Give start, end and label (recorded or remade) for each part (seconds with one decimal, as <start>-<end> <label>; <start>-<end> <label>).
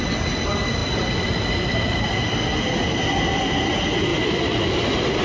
0.0-0.8 recorded; 0.8-2.2 remade; 2.2-4.1 recorded; 4.1-4.7 remade; 4.7-5.2 recorded